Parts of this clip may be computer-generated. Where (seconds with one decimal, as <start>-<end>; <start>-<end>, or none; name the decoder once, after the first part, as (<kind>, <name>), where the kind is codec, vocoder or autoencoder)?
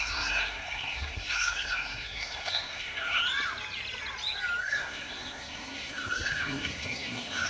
0.0-3.2 (codec, SNAC); 4.6-7.5